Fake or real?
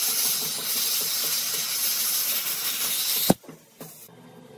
real